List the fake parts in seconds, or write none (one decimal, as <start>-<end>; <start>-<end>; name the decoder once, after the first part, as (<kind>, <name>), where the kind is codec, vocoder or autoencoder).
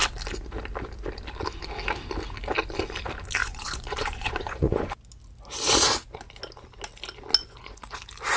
3.4-5.0 (vocoder, Vocos); 7.4-8.0